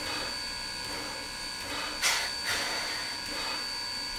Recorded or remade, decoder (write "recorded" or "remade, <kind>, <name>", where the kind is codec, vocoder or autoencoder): recorded